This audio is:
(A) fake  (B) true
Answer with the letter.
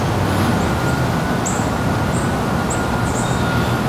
B